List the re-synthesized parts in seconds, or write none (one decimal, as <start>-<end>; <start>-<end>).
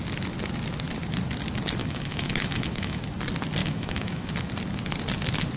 1.8-3.0; 3.6-4.3